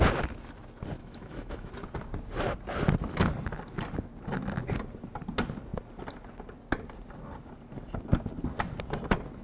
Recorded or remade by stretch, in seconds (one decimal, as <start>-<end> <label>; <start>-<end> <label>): 0.0-1.0 recorded; 1.0-1.7 remade; 1.7-9.4 recorded